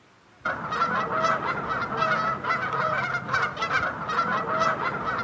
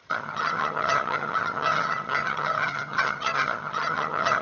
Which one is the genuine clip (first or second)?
first